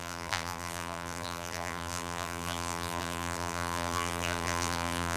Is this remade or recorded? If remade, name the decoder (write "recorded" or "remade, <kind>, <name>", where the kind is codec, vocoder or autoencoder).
remade, vocoder, BigVGAN v2